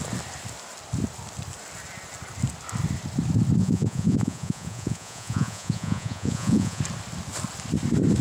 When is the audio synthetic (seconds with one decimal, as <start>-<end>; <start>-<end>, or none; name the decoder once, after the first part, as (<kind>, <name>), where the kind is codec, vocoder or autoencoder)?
3.6-6.8 (vocoder, Vocos)